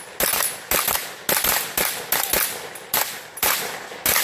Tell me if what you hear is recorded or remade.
recorded